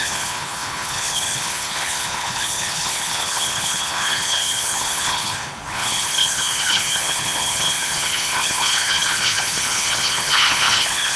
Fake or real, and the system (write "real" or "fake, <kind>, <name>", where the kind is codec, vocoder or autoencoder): fake, codec, HILCodec